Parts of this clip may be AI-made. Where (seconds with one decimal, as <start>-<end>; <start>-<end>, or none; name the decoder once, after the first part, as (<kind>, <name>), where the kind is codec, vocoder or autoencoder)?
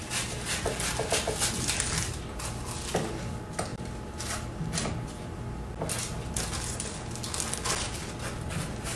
none